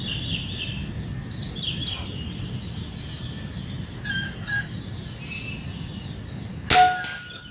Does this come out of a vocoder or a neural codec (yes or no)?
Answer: no